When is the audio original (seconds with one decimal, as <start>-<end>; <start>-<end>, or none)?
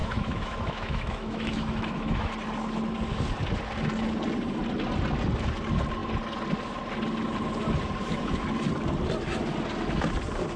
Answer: 2.3-10.6